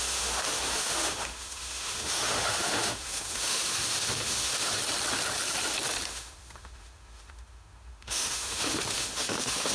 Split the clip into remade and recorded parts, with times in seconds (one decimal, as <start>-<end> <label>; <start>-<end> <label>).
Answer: 0.0-4.8 remade; 4.8-6.1 recorded; 6.1-9.7 remade